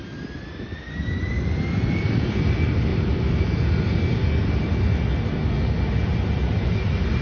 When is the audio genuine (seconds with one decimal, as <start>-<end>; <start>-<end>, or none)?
0.0-7.2